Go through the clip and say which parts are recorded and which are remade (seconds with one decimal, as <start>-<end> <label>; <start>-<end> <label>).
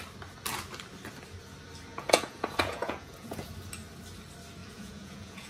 0.0-1.9 recorded; 1.9-3.5 remade; 3.5-4.6 recorded; 4.6-5.5 remade